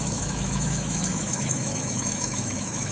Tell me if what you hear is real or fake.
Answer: fake